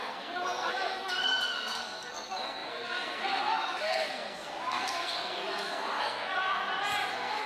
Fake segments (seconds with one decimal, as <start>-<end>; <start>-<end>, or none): 0.0-6.6; 7.1-7.5